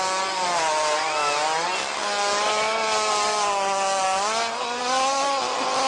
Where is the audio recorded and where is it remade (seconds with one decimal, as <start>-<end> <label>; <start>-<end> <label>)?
0.0-5.9 recorded